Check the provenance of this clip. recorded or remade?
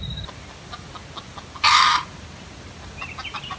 recorded